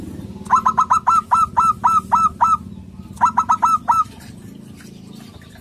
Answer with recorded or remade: recorded